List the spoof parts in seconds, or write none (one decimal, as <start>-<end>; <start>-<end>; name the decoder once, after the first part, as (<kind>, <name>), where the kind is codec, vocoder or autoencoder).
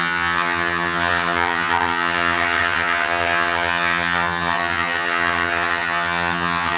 0.0-6.8 (vocoder, HiFi-GAN)